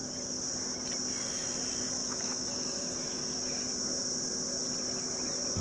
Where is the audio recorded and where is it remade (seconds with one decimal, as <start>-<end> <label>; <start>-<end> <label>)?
0.0-2.0 recorded; 2.0-3.2 remade; 3.2-5.6 recorded